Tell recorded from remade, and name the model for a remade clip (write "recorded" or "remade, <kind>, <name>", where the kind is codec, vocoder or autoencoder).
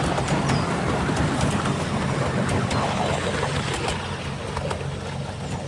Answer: recorded